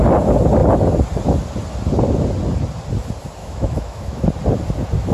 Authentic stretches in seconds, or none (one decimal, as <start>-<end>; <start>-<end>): 0.0-3.4; 4.3-5.1